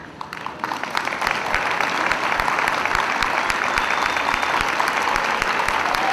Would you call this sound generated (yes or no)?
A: no